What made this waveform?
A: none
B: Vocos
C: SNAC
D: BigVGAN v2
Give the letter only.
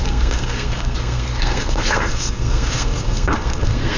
C